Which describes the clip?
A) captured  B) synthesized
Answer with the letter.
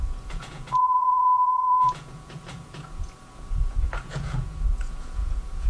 B